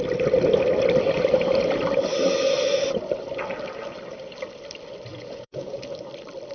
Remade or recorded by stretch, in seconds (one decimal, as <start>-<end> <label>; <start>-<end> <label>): 0.0-5.1 recorded; 5.1-5.8 remade; 5.8-6.5 recorded